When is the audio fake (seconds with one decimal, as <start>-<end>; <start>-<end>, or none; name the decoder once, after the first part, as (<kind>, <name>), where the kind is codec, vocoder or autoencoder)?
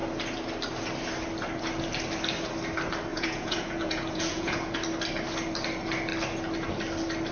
3.1-4.7 (vocoder, Vocos)